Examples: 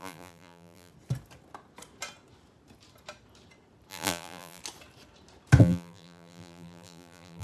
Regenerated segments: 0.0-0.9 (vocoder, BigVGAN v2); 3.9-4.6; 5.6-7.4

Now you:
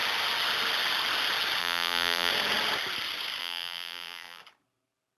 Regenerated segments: 1.6-2.3 (vocoder, BigVGAN v2); 3.4-4.4

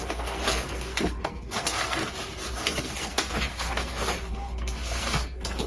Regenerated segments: 0.0-2.0 (codec, SNAC); 2.5-5.7